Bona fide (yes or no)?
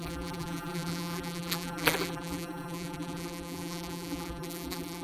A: no